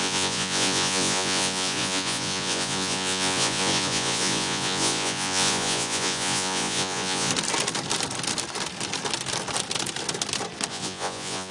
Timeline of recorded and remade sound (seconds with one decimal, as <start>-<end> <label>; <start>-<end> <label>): 0.0-7.3 remade; 7.3-10.7 recorded; 10.7-11.5 remade